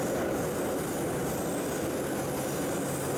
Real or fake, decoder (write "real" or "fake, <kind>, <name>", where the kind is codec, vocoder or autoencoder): real